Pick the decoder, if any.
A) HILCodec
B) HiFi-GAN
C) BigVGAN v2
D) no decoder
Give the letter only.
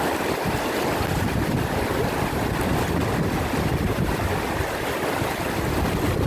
D